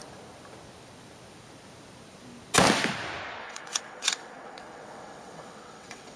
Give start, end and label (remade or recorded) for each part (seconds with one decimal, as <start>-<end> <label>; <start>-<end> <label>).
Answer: 0.0-3.4 recorded; 3.4-6.2 remade